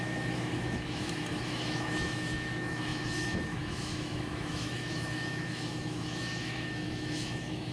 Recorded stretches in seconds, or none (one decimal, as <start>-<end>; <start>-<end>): none